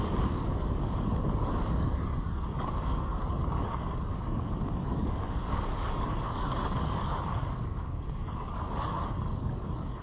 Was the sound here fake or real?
fake